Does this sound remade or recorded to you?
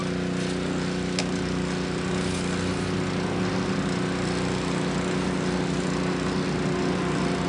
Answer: recorded